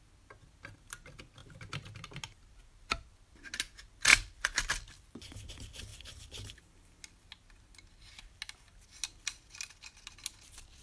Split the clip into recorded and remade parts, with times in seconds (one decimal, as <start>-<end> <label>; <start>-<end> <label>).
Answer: 0.0-4.1 recorded; 4.1-5.5 remade; 5.5-10.8 recorded